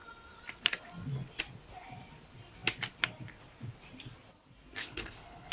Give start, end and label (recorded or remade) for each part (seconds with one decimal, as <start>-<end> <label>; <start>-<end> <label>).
0.0-4.8 recorded; 4.8-5.5 remade